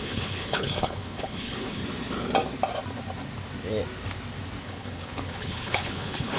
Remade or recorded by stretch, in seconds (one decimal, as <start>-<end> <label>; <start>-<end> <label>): 0.0-1.8 remade; 1.8-4.6 recorded; 4.6-6.4 remade